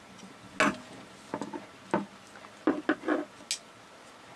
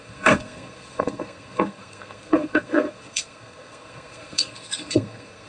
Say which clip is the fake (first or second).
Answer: second